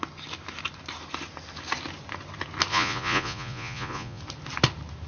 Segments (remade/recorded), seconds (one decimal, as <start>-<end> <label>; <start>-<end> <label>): 0.0-2.7 recorded; 2.7-4.2 remade; 4.2-5.1 recorded